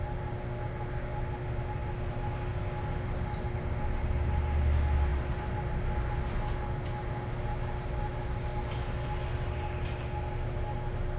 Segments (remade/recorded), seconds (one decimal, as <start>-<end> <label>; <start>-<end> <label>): 0.0-11.2 recorded